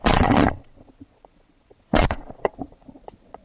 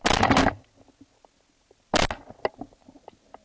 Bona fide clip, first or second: second